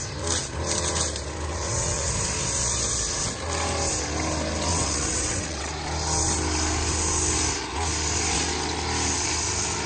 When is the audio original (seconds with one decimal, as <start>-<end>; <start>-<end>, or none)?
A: 0.0-1.5; 2.1-4.7; 5.7-9.9